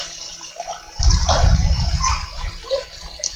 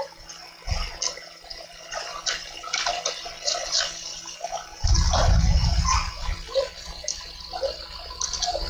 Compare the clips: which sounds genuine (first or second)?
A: second